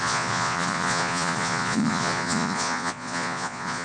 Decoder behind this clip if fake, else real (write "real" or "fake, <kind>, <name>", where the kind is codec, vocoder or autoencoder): fake, vocoder, Vocos